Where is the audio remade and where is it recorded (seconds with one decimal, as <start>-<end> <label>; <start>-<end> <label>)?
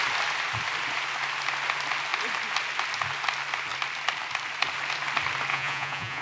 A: 0.0-5.5 recorded; 5.5-6.2 remade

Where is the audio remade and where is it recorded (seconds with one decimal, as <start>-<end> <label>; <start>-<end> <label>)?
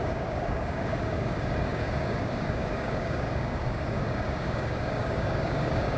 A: 0.0-6.0 remade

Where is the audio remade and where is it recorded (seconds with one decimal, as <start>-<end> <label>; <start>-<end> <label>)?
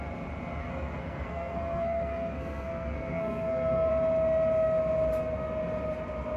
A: 0.0-0.6 recorded; 0.6-3.9 remade; 3.9-6.4 recorded